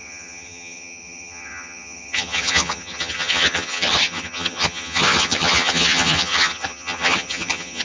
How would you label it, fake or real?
fake